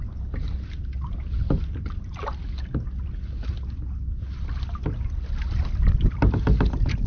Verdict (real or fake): real